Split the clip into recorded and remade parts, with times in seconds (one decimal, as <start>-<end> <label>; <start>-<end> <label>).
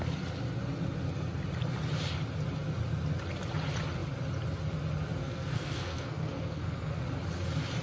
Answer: 0.0-5.2 recorded; 5.2-7.0 remade; 7.0-7.8 recorded